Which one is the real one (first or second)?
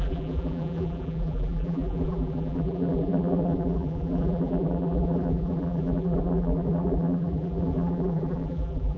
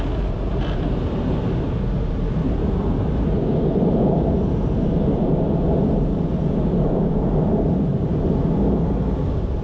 second